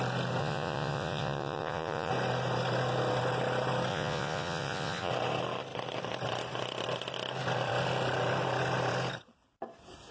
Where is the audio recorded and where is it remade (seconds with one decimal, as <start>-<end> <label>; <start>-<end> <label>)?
0.0-0.4 recorded; 0.4-2.1 remade; 2.1-3.9 recorded; 3.9-5.1 remade; 5.1-10.1 recorded